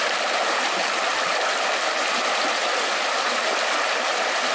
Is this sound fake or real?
fake